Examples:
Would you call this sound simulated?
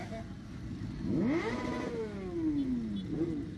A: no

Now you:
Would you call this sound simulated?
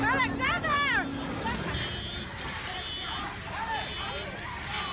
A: no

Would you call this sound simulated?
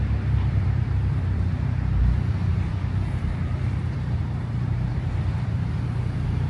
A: yes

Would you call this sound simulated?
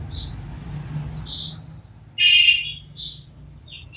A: no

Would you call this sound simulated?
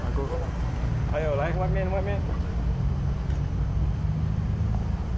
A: no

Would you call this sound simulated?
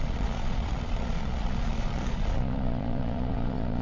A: yes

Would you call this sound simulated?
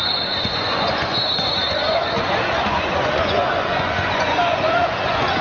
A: yes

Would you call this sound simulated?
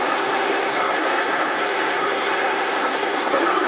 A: yes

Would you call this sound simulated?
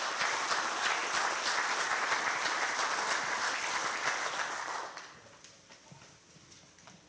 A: no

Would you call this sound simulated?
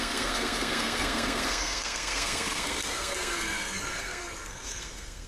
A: yes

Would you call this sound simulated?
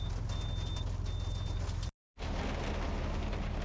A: no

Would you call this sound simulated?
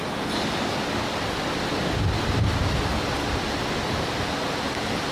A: no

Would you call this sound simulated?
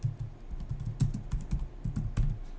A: no